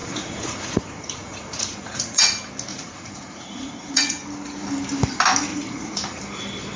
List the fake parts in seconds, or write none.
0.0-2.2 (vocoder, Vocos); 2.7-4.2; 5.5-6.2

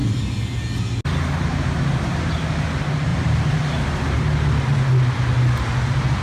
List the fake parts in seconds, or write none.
3.1-4.6 (vocoder, BigVGAN v2)

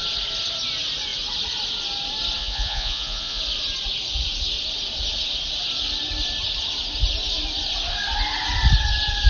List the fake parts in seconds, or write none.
2.4-3.4 (vocoder, Vocos)

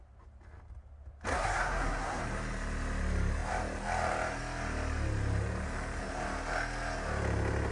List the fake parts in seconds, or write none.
1.3-2.2 (codec, SNAC)

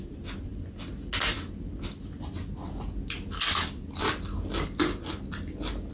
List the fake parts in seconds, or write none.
none

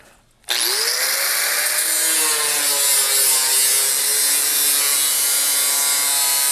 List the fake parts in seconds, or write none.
none

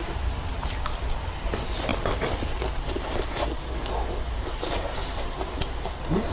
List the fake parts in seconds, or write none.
none

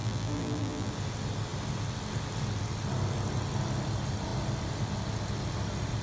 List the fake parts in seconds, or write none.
0.0-0.9 (vocoder, BigVGAN v2)